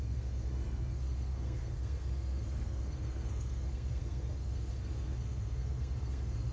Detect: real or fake fake